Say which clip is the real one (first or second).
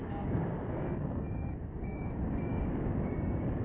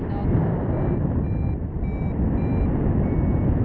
second